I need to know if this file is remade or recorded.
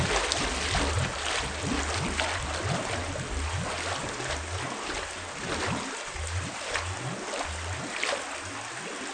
recorded